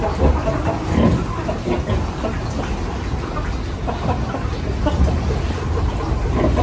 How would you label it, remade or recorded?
recorded